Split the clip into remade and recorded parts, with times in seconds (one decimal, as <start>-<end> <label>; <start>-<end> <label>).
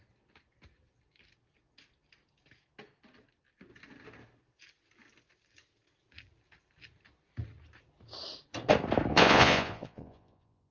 0.0-9.1 recorded; 9.1-10.7 remade